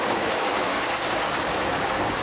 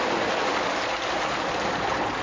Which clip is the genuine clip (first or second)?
second